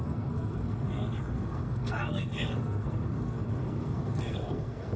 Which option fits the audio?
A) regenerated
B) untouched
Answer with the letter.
A